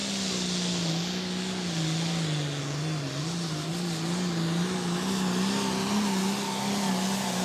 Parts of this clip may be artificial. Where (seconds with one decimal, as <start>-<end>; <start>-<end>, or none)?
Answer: none